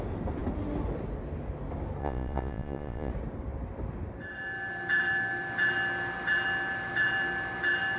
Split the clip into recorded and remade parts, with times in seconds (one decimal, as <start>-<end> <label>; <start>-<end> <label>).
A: 0.0-2.0 recorded; 2.0-3.1 remade; 3.1-8.0 recorded